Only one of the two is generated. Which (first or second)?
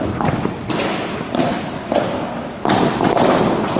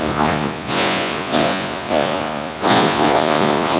second